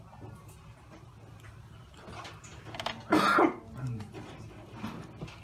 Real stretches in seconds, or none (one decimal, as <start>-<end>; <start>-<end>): 0.0-5.4